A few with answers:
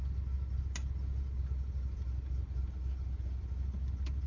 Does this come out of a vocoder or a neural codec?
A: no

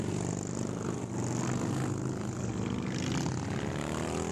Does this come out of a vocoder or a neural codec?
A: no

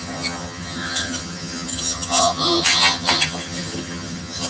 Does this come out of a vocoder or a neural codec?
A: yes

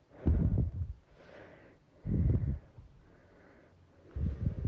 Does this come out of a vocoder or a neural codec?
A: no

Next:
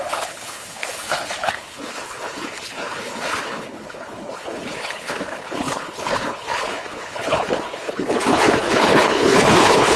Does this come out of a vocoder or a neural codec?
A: yes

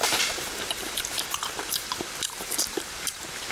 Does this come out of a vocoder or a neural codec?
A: yes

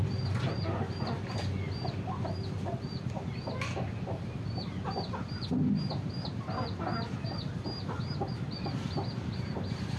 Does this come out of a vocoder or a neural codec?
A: no